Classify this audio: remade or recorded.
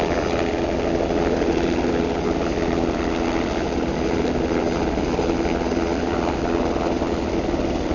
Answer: recorded